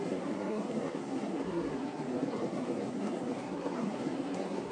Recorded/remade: remade